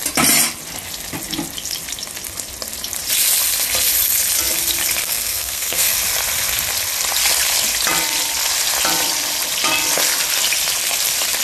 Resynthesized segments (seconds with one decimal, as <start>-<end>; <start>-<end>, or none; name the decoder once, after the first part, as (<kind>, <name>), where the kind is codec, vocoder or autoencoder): 5.0-6.0 (codec, SNAC)